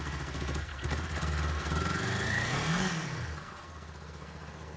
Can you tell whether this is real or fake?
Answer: fake